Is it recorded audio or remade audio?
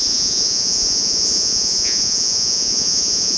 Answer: remade